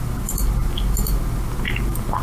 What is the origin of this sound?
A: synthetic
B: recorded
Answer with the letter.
B